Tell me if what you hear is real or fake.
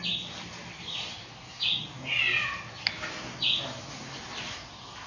real